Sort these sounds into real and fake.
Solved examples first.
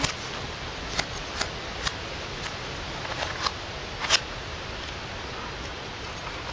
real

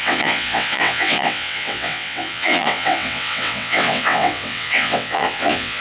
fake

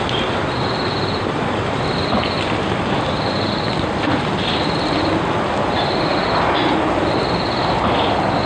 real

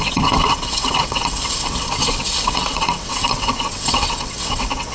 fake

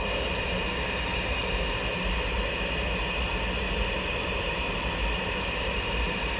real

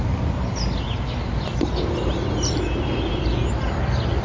real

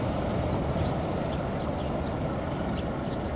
real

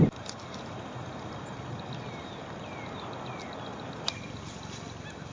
real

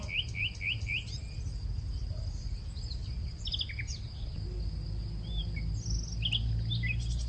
real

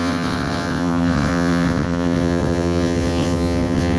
fake